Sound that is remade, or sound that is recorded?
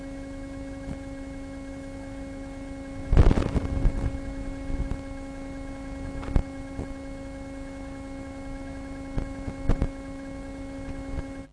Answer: recorded